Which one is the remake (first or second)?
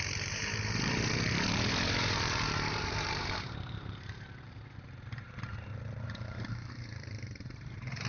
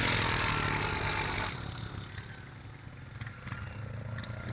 first